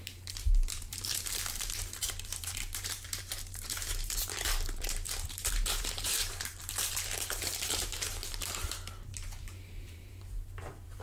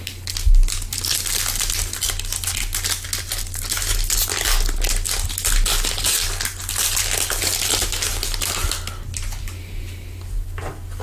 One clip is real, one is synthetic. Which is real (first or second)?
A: second